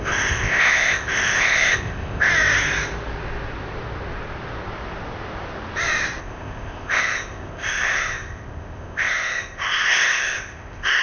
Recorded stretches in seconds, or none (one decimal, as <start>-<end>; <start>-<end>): 2.3-6.2